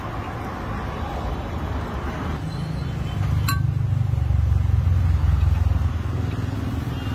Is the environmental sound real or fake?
real